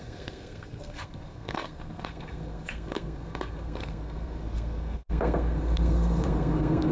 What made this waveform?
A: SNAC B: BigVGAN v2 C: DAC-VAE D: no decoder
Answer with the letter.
A